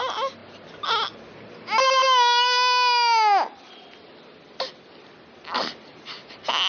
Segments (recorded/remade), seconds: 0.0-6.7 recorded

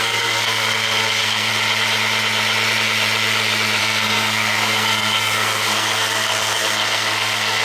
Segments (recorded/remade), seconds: 0.0-1.5 remade; 1.5-3.8 recorded; 3.8-7.6 remade

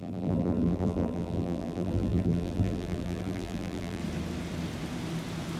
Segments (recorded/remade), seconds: 0.0-4.0 remade; 4.0-5.6 recorded

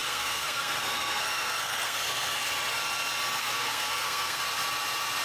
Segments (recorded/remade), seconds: 0.0-2.5 remade; 2.5-3.4 recorded; 3.4-4.4 remade; 4.4-5.2 recorded

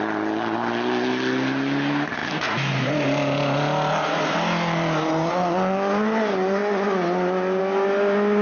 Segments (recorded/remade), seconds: 0.0-8.4 recorded

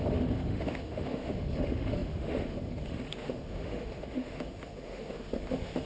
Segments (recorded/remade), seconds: 0.0-5.9 remade

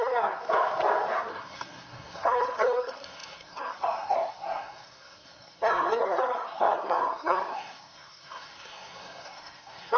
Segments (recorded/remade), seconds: 0.0-0.4 remade; 0.4-1.3 recorded; 1.3-10.0 remade

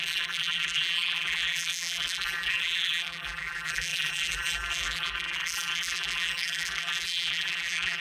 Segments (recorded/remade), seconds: 0.0-8.0 remade